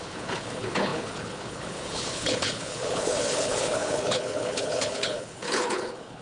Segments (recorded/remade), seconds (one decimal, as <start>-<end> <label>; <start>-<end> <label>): 0.0-6.2 remade

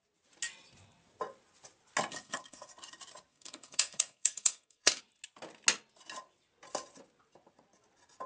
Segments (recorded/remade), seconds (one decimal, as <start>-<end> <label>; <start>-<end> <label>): 0.0-2.1 recorded; 2.1-2.7 remade; 2.7-3.3 recorded; 3.3-5.0 remade; 5.0-8.3 recorded

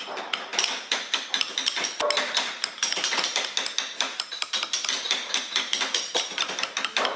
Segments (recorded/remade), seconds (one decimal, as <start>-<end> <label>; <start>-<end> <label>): 0.0-7.2 recorded

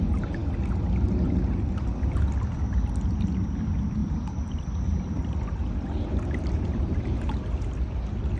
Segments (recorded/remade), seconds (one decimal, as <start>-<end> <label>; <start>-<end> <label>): 0.0-4.0 recorded; 4.0-5.6 remade; 5.6-6.1 recorded; 6.1-7.4 remade; 7.4-8.4 recorded

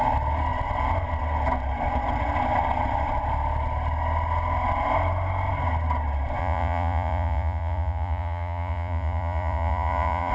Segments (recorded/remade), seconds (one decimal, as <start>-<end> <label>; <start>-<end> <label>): 0.0-6.4 recorded; 6.4-10.3 remade

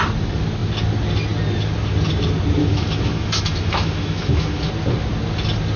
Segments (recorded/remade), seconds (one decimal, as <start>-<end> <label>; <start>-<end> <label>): 0.0-2.6 recorded; 2.6-4.7 remade; 4.7-5.8 recorded

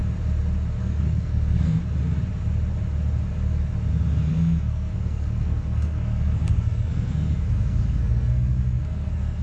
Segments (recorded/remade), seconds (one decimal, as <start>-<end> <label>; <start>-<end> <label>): 0.0-0.8 recorded; 0.8-1.8 remade; 1.8-4.3 recorded; 4.3-9.4 remade

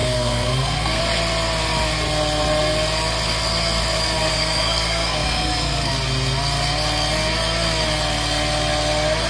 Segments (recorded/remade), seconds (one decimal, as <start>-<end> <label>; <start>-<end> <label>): 0.0-1.0 remade; 1.0-4.3 recorded; 4.3-5.9 remade; 5.9-9.3 recorded